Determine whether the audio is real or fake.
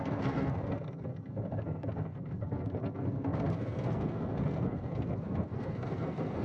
fake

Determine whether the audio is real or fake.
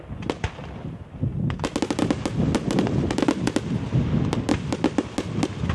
real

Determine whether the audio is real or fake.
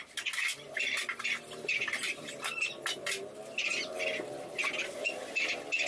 real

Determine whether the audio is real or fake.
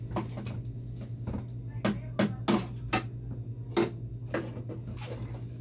real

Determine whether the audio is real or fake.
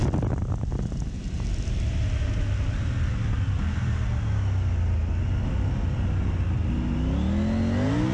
real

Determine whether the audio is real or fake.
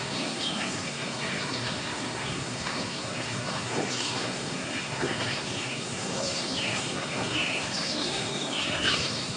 fake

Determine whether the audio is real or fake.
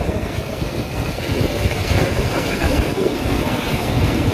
fake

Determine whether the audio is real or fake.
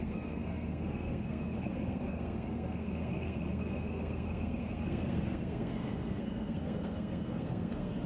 fake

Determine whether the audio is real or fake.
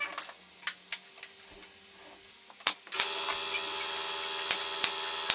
real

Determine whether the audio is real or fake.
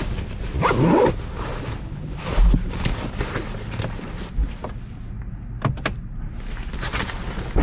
real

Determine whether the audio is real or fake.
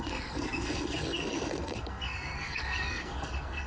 fake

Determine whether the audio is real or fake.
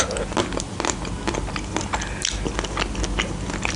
real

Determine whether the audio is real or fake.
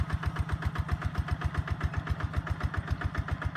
real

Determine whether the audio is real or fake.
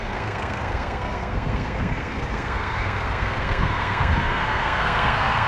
fake